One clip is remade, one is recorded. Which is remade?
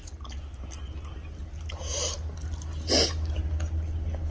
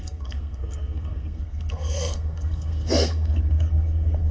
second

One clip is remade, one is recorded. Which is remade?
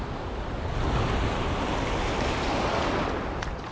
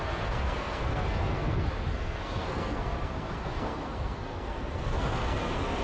second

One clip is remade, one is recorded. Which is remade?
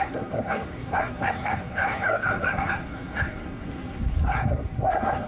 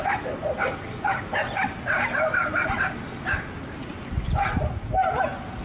first